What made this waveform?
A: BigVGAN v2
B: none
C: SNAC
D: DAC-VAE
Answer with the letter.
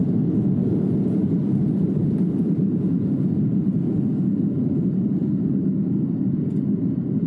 B